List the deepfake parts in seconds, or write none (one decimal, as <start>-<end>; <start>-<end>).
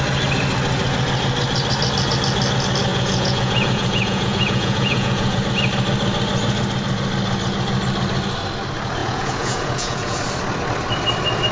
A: 2.9-5.4; 9.0-10.2